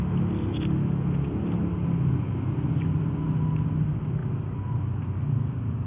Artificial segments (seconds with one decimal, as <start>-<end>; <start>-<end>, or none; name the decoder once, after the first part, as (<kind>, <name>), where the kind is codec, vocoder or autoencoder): none